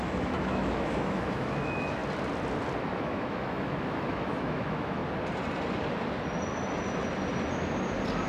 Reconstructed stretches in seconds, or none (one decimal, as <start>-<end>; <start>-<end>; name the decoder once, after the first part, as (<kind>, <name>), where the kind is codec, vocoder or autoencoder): 0.0-2.0 (autoencoder, DAC-VAE); 2.9-5.0